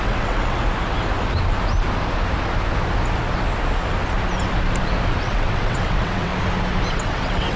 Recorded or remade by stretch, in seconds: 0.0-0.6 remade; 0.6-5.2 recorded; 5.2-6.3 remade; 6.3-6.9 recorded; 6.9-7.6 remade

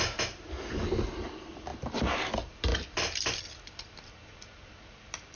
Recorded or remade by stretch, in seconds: 0.0-5.4 recorded